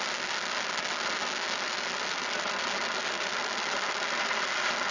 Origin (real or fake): real